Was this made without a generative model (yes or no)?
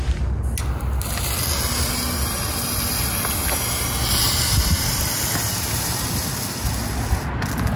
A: yes